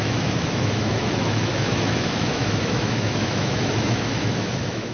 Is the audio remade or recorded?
remade